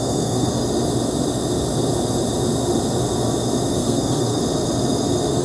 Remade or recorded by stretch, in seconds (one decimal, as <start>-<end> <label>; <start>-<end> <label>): 0.0-0.5 remade; 0.5-3.7 recorded; 3.7-4.4 remade; 4.4-5.4 recorded